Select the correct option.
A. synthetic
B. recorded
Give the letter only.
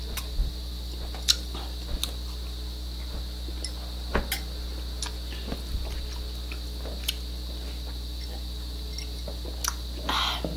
B